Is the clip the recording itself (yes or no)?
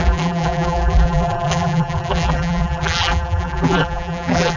no